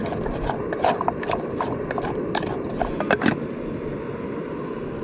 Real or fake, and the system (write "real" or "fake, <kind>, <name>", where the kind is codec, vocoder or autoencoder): real